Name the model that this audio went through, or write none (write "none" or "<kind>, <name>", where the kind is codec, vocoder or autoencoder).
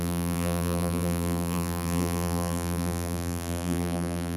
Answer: vocoder, BigVGAN v2